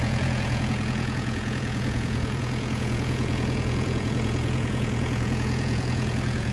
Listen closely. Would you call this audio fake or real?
fake